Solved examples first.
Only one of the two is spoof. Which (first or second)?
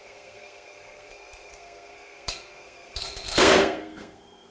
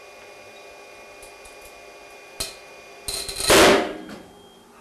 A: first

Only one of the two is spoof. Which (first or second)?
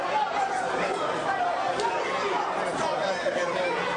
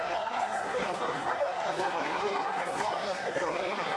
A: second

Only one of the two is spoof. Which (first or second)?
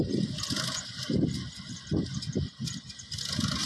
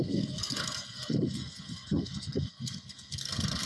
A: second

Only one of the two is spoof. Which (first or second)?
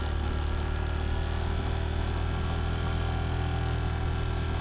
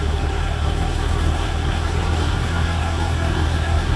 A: second